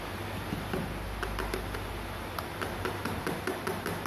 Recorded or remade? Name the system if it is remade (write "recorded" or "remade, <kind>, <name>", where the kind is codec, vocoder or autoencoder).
recorded